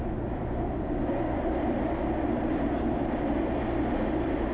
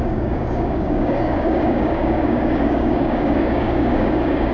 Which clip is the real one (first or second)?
first